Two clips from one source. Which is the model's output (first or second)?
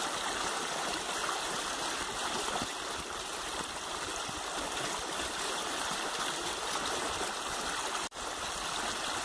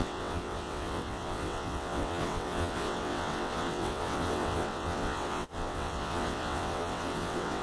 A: second